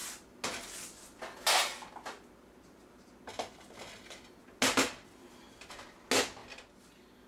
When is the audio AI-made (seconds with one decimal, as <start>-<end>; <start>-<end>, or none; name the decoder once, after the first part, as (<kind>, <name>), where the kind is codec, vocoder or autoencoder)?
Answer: none